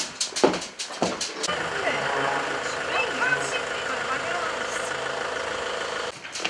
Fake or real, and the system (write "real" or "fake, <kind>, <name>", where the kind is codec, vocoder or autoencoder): real